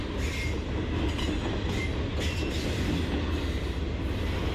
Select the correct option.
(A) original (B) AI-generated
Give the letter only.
A